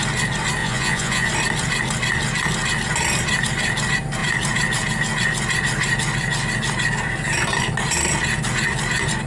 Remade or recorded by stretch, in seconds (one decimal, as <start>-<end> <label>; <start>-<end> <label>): 0.0-0.6 recorded; 0.6-1.3 remade; 1.3-9.3 recorded